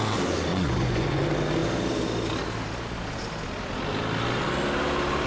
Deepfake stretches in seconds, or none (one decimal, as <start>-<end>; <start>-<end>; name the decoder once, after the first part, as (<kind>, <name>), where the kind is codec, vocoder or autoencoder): 0.5-1.2 (vocoder, Vocos)